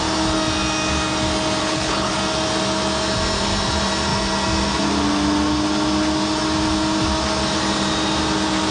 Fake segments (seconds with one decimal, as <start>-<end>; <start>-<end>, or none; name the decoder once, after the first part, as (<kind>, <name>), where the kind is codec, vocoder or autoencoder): 1.6-2.2 (codec, HILCodec)